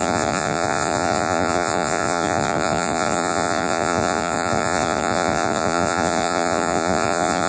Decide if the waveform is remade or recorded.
remade